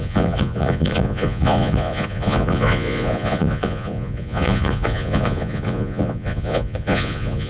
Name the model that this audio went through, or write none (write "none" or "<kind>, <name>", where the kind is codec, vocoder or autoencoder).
vocoder, Vocos